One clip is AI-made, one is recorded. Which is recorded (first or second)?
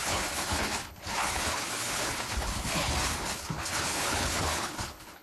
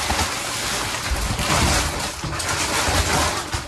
second